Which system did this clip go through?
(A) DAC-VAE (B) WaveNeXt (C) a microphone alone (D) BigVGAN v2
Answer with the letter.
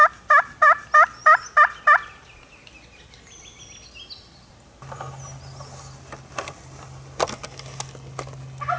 C